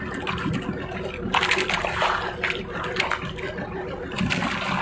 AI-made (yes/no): no